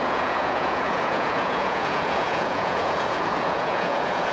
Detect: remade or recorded remade